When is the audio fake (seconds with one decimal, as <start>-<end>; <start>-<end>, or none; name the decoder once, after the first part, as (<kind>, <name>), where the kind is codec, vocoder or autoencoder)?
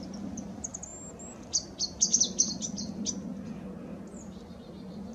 none